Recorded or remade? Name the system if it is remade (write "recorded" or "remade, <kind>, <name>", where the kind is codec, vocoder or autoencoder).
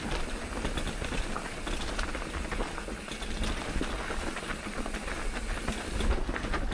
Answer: recorded